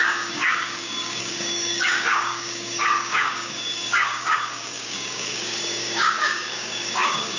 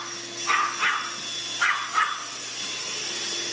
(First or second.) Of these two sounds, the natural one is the second